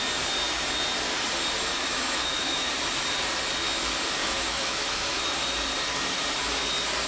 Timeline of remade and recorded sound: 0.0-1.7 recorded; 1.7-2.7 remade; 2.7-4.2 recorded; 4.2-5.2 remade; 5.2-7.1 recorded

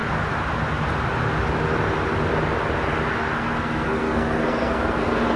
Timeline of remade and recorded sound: 0.0-3.2 recorded; 3.2-5.4 remade

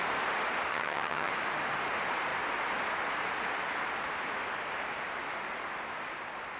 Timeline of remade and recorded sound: 0.0-0.7 recorded; 0.7-1.3 remade; 1.3-6.6 recorded

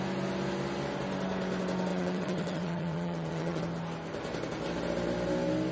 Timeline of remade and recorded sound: 0.0-1.9 recorded; 1.9-3.6 remade; 3.6-5.7 recorded

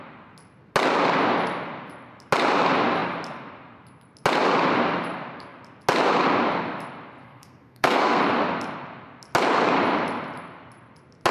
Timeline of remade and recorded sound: 0.0-7.2 recorded; 7.2-8.2 remade; 8.2-11.3 recorded

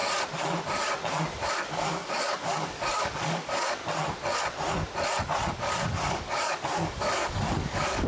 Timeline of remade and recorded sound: 0.0-1.5 recorded; 1.5-3.8 remade; 3.8-5.5 recorded; 5.5-8.1 remade